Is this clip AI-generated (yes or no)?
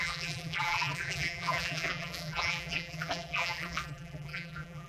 yes